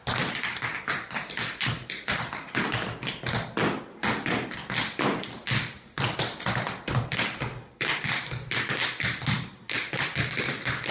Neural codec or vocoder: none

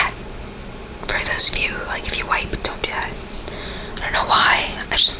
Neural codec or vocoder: none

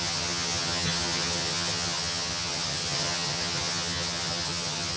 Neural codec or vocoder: vocoder, HiFi-GAN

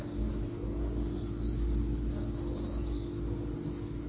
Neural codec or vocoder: none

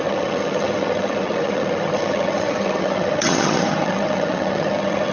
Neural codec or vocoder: vocoder, HiFi-GAN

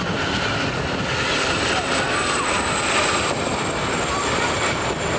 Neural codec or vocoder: none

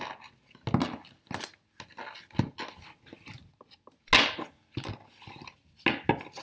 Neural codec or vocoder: none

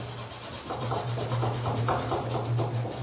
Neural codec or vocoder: none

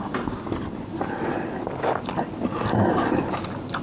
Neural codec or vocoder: none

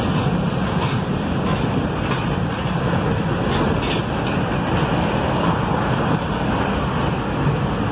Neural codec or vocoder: none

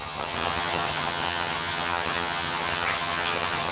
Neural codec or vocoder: vocoder, HiFi-GAN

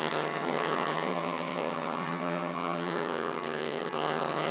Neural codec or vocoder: vocoder, HiFi-GAN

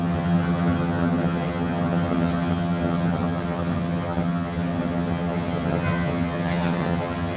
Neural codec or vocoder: vocoder, HiFi-GAN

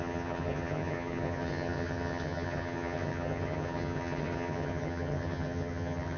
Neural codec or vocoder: vocoder, HiFi-GAN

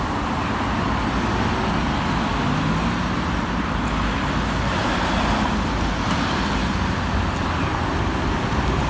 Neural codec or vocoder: none